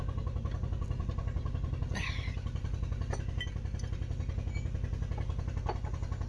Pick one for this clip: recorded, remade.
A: recorded